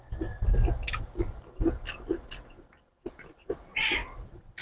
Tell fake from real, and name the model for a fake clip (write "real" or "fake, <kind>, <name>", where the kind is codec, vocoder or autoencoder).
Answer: real